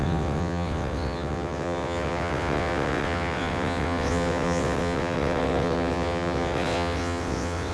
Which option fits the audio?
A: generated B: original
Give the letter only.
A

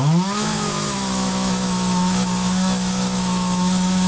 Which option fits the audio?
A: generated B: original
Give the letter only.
A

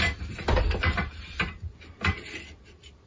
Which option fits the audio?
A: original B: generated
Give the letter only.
A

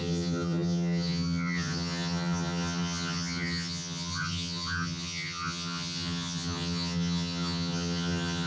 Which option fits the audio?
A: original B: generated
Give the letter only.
B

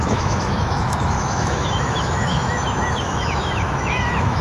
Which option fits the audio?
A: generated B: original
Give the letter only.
A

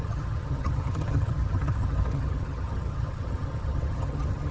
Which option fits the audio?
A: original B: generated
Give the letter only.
B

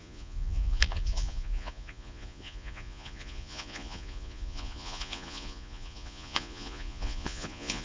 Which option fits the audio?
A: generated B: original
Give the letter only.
A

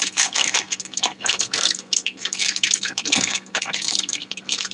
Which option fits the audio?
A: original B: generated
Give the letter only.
B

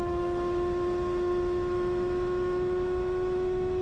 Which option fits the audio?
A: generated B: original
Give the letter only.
A